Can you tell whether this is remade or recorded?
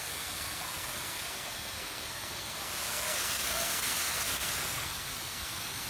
remade